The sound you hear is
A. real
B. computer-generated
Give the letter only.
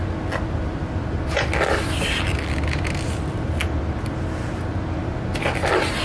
A